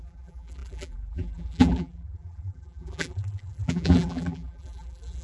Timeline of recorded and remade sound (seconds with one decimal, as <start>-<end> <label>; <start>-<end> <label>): 0.0-5.2 remade